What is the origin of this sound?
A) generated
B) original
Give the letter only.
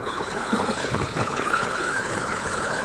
A